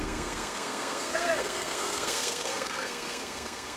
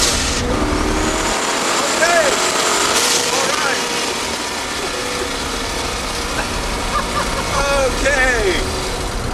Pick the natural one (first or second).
second